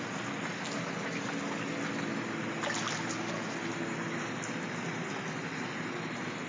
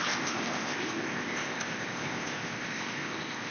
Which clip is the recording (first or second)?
first